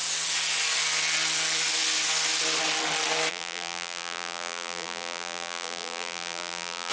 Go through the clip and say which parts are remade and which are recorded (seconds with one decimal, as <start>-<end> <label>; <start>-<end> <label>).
0.0-3.3 recorded; 3.3-6.9 remade